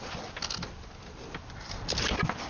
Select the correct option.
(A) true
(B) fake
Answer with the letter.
A